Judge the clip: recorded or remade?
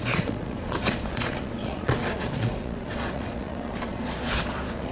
remade